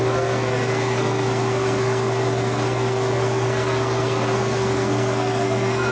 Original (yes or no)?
no